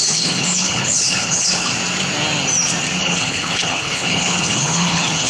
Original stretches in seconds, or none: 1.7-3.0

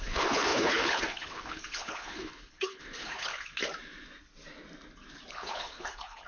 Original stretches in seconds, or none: 3.6-5.3

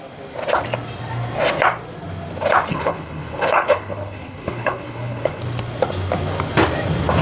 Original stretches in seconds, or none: 0.0-2.7; 5.4-7.2

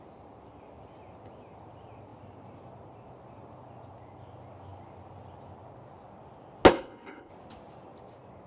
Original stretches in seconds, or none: 0.0-6.7; 7.3-8.5

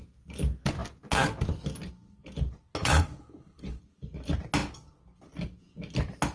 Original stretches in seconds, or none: 0.0-2.8; 3.8-6.3

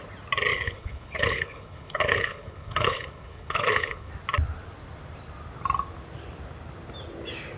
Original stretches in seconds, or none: 0.0-0.5; 4.1-7.6